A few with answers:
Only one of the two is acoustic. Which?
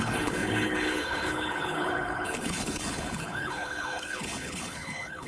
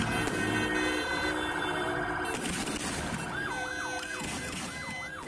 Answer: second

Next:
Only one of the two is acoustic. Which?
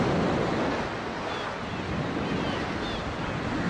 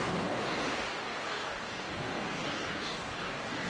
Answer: first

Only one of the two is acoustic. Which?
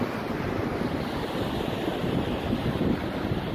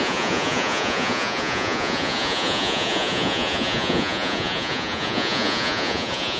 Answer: first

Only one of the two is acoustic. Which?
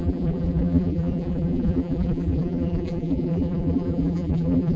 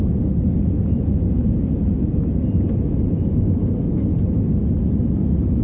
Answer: second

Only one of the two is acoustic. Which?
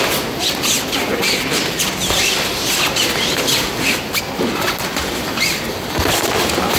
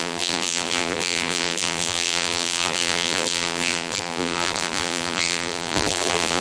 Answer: first